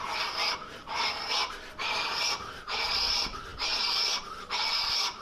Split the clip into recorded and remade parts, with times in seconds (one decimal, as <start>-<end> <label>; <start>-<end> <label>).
0.0-5.2 recorded

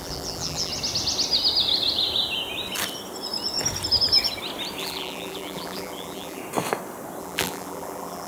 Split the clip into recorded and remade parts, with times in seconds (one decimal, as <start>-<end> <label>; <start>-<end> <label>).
0.0-0.7 remade; 0.7-4.8 recorded; 4.8-6.4 remade; 6.4-7.2 recorded; 7.2-8.3 remade

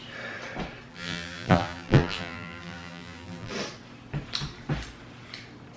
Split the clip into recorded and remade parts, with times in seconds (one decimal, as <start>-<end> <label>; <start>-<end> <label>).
0.0-0.9 recorded; 0.9-3.5 remade; 3.5-5.8 recorded

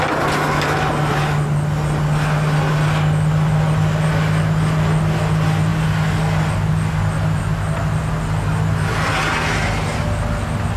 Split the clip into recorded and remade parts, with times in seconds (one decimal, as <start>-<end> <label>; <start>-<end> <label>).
0.0-10.8 recorded

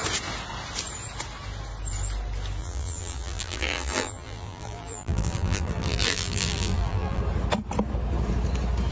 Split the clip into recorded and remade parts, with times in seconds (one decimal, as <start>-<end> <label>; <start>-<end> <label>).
0.0-2.6 recorded; 2.6-7.2 remade; 7.2-8.9 recorded

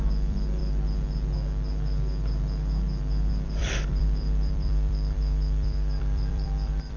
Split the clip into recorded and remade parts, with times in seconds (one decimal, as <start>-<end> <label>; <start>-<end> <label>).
0.0-0.6 remade; 0.6-3.3 recorded; 3.3-7.0 remade

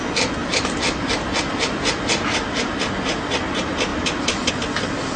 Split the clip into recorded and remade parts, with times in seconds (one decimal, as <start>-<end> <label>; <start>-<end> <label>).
0.0-0.4 recorded; 0.4-2.3 remade; 2.3-3.9 recorded; 3.9-4.5 remade; 4.5-5.2 recorded